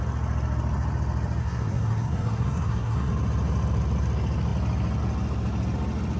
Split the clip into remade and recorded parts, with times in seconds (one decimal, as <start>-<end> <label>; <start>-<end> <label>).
0.0-1.4 recorded; 1.4-3.1 remade; 3.1-6.2 recorded